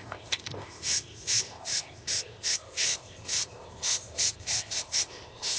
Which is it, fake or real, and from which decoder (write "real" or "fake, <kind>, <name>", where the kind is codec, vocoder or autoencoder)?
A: fake, codec, ZipCodec